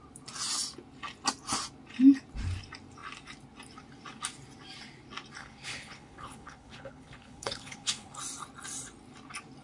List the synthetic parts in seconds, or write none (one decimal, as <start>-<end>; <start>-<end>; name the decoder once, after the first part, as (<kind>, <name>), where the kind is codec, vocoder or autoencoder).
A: 5.4-8.2 (codec, HILCodec)